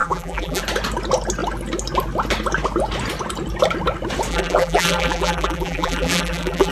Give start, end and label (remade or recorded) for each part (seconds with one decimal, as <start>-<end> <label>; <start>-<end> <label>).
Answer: 0.0-0.6 remade; 0.6-4.3 recorded; 4.3-6.7 remade